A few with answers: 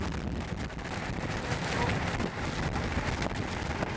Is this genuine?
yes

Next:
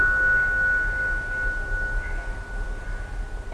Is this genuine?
yes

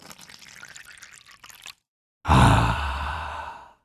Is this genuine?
yes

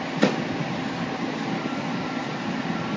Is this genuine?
yes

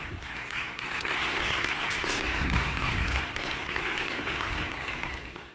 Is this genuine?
no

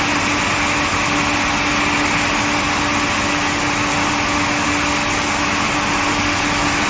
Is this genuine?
yes